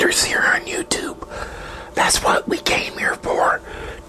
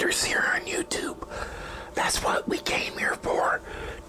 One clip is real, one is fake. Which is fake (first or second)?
second